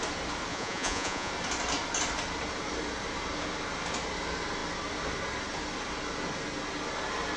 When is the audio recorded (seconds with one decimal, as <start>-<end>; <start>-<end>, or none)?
0.0-0.5; 1.3-7.4